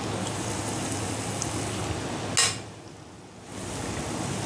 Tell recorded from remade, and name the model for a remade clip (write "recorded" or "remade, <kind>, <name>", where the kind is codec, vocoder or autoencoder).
recorded